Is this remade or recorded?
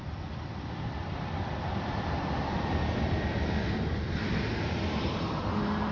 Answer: recorded